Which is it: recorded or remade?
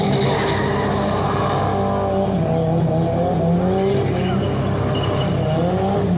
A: recorded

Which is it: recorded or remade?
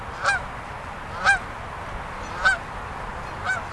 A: recorded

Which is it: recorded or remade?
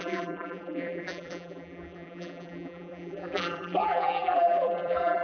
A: remade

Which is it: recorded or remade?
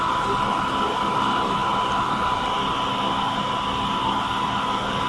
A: recorded